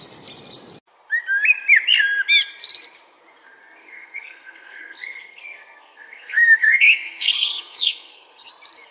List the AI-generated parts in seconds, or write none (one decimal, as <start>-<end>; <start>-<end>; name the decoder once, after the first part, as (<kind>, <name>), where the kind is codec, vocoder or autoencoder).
3.8-8.5 (codec, SNAC)